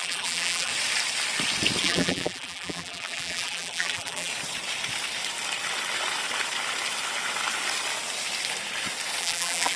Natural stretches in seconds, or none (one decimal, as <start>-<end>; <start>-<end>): 0.7-1.8; 4.3-9.2